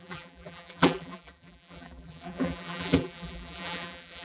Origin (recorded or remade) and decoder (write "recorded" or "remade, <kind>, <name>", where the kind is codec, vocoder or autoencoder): remade, vocoder, BigVGAN v2